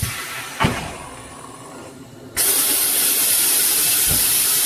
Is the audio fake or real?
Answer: fake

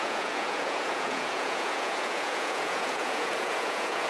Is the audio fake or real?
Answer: fake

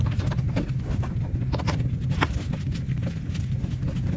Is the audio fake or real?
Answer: real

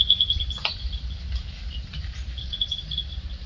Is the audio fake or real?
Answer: fake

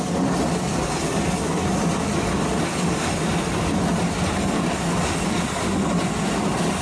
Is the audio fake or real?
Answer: real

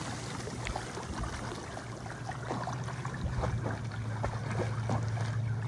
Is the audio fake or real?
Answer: real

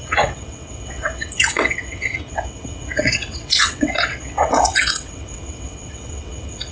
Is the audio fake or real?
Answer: fake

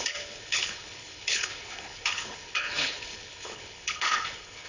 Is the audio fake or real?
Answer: fake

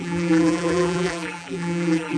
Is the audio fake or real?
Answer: fake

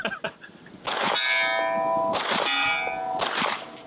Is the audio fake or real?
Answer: real